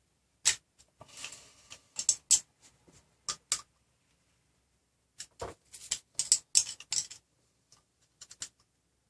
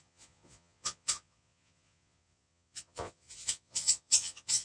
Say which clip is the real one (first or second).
first